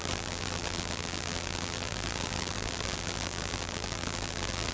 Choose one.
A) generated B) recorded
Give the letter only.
A